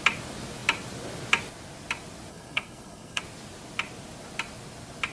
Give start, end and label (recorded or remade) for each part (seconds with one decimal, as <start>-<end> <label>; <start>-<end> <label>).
0.0-2.3 recorded; 2.3-3.2 remade; 3.2-5.1 recorded